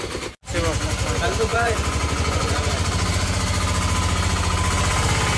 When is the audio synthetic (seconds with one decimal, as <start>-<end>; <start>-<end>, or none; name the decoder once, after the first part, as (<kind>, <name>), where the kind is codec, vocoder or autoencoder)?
1.5-2.7 (vocoder, Vocos)